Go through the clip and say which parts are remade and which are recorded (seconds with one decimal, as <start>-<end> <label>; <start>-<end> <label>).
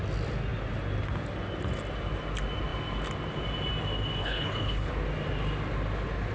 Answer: 0.0-4.2 recorded; 4.2-4.9 remade; 4.9-6.3 recorded